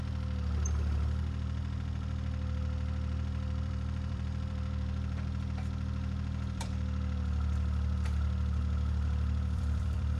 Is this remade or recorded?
remade